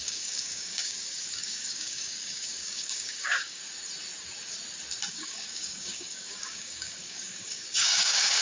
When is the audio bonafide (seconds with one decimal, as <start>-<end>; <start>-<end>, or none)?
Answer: 3.6-5.1